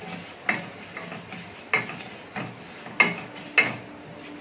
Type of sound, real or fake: real